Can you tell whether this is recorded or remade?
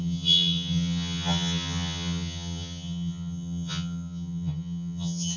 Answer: remade